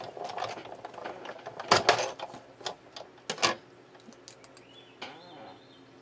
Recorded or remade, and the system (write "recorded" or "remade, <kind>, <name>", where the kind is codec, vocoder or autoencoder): recorded